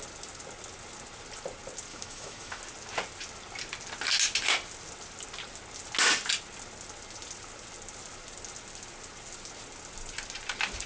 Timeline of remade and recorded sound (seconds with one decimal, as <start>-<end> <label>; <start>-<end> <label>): 0.0-1.9 recorded; 1.9-2.6 remade; 2.6-10.9 recorded